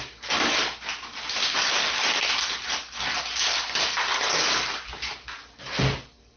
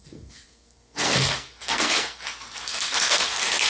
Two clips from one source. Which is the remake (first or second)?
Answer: second